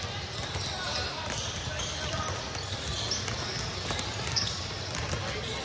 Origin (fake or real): real